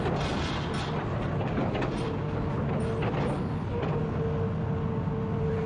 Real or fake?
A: real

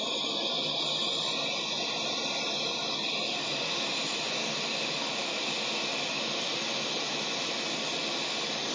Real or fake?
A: real